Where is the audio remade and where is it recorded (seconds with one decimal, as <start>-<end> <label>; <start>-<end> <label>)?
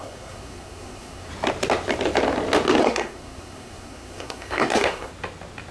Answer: 0.0-1.3 remade; 1.3-2.8 recorded; 2.8-5.1 remade; 5.1-5.7 recorded